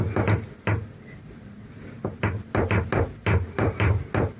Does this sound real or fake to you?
real